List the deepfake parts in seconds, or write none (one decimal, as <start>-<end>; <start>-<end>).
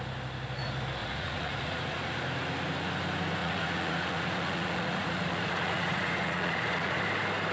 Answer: 1.0-2.2; 3.4-7.0